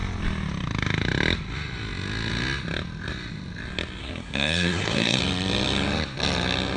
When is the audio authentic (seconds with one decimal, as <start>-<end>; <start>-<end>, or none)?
0.0-4.0; 5.2-6.8